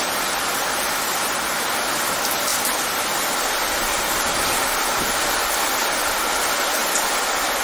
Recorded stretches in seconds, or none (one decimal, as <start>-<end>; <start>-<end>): 0.0-7.6